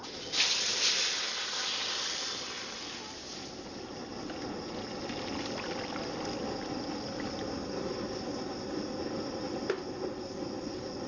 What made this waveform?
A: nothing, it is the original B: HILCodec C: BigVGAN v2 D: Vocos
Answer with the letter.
A